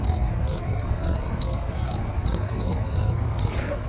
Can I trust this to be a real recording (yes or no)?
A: no